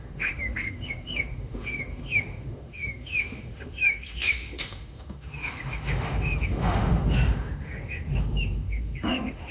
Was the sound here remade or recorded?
remade